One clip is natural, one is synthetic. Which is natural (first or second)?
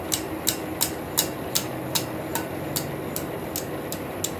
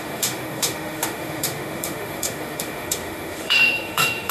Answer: first